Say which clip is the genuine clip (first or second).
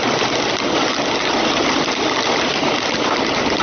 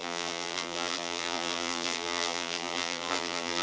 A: first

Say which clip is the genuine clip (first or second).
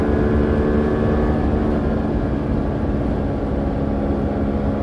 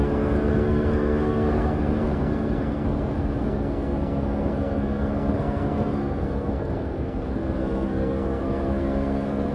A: first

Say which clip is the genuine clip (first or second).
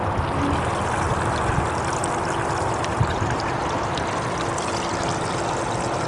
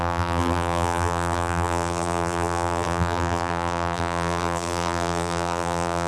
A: first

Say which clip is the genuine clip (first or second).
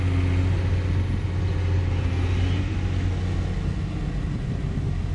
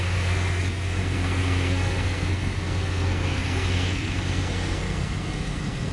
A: first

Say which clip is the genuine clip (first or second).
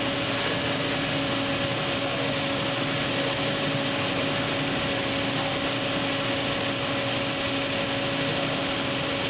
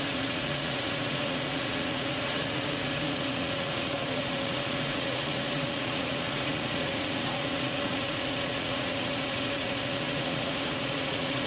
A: first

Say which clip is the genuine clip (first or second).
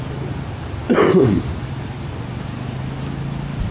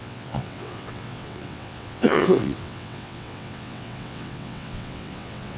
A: first